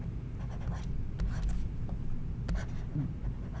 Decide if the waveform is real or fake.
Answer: real